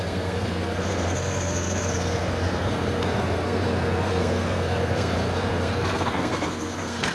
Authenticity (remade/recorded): remade